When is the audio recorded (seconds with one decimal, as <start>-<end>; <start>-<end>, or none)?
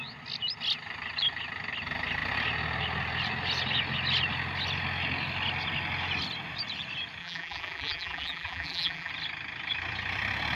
0.0-7.2; 9.1-10.5